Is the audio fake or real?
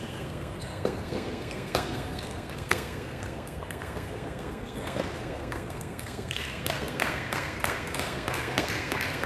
fake